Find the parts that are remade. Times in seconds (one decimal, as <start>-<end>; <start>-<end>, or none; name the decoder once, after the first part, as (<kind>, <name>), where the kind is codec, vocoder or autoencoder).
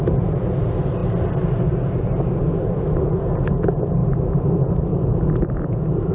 4.9-6.1 (vocoder, Vocos)